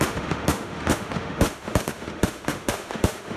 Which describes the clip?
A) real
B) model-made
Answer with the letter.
B